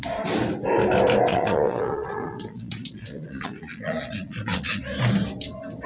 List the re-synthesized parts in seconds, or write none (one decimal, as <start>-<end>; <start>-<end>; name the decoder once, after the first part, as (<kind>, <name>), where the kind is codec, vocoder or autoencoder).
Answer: 1.3-4.8 (vocoder, Vocos)